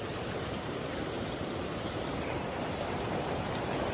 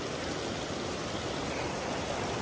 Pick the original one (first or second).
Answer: second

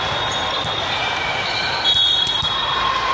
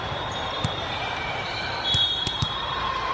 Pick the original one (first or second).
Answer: first